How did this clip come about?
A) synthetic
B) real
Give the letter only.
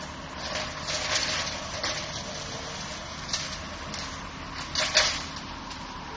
B